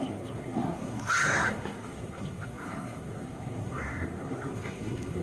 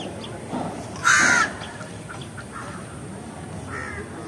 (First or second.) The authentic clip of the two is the second